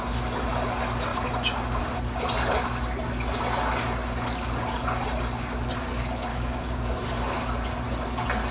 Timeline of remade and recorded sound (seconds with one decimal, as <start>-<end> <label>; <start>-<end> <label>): 0.0-6.3 recorded; 6.3-7.0 remade; 7.0-8.5 recorded

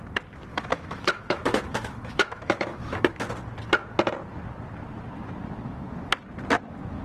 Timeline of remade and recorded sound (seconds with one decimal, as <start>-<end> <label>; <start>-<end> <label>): 0.0-0.5 recorded; 0.5-3.3 remade; 3.3-7.0 recorded

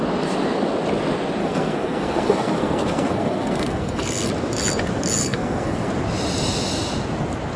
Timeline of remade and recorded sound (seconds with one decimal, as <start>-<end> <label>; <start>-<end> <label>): 0.0-1.4 recorded; 1.4-4.3 remade; 4.3-5.2 recorded; 5.2-5.9 remade; 5.9-7.6 recorded